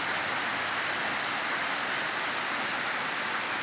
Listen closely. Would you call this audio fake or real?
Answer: real